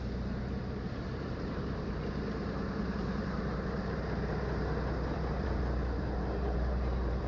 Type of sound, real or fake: fake